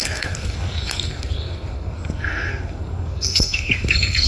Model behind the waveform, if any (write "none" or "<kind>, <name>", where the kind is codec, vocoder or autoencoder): codec, SNAC